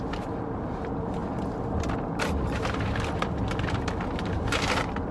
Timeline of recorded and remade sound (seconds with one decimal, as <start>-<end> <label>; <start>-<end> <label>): 0.0-5.1 recorded

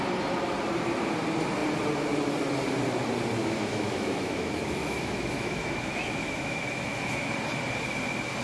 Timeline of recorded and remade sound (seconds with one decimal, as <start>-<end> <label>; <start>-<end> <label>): 0.0-3.4 recorded; 3.4-7.3 remade; 7.3-8.4 recorded

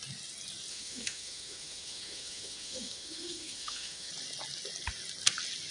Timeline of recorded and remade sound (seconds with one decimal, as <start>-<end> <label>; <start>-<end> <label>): 0.0-0.7 recorded; 0.7-4.1 remade; 4.1-5.7 recorded

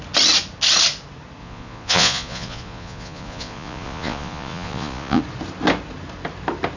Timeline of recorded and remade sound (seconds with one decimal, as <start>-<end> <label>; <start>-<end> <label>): 0.0-1.4 recorded; 1.4-5.2 remade; 5.2-6.8 recorded

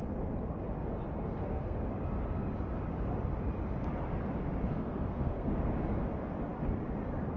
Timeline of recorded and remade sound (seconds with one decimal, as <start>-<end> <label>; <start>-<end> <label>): 0.0-1.4 recorded; 1.4-1.9 remade; 1.9-4.7 recorded; 4.7-5.5 remade; 5.5-7.4 recorded

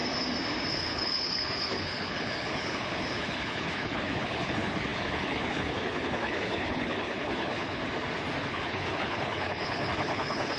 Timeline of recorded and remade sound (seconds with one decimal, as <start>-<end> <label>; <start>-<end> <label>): 0.0-0.7 recorded; 0.7-7.8 remade; 7.8-8.4 recorded; 8.4-10.6 remade